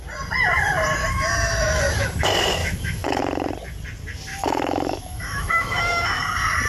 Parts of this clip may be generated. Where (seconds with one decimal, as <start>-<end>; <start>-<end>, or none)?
1.0-1.8; 2.6-3.2; 4.3-6.2